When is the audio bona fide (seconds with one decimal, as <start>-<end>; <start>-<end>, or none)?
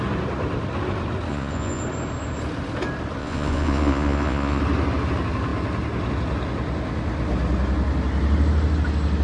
0.0-1.3; 1.8-3.2; 4.6-9.2